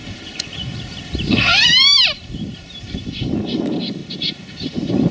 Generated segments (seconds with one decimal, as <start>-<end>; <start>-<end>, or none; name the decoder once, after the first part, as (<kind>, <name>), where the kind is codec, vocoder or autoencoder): 0.0-3.1 (vocoder, BigVGAN v2); 4.0-5.1